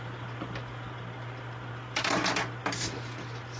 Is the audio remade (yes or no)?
no